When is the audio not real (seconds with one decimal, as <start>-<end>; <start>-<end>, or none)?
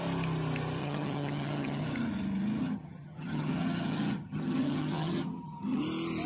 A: 0.8-1.8; 2.6-5.8